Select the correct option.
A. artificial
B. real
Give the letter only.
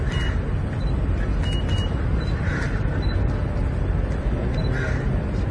B